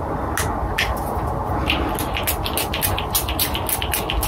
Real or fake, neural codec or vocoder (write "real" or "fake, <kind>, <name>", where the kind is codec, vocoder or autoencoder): real